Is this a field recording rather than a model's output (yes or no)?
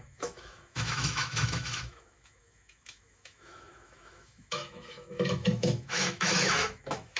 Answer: no